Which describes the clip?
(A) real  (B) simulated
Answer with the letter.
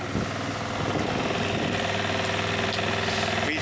A